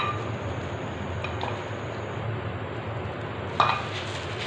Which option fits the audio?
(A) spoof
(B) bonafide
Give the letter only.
B